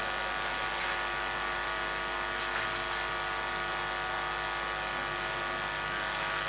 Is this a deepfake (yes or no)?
no